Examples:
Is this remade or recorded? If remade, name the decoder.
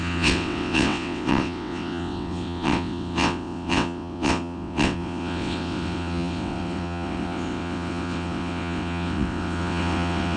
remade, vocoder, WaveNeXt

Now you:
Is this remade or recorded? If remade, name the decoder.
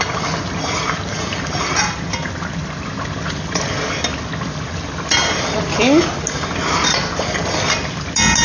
recorded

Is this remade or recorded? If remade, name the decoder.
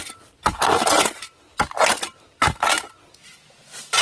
recorded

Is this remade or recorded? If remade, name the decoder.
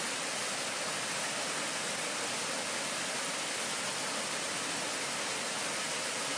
recorded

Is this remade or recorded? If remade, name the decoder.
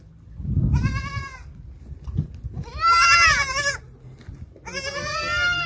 recorded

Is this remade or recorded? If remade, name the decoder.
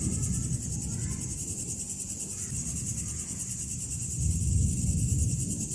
recorded